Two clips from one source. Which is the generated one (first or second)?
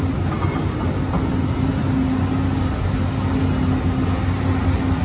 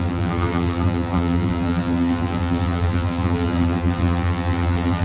second